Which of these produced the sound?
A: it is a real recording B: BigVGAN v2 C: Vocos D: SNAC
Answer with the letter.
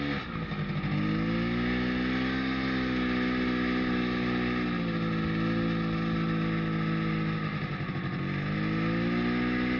A